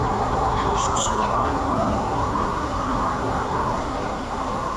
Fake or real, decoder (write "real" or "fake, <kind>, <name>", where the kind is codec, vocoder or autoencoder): fake, codec, SNAC